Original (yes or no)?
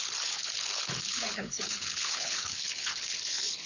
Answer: no